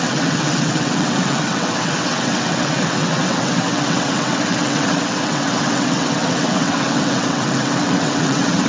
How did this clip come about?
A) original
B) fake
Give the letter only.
B